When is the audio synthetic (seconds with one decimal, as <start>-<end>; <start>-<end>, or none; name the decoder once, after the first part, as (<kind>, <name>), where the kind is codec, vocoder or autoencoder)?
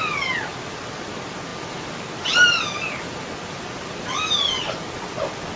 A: none